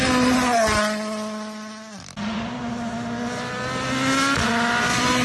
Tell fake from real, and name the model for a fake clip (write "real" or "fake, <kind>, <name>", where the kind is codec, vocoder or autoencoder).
real